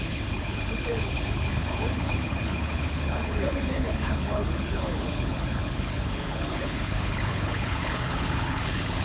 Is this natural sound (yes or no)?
no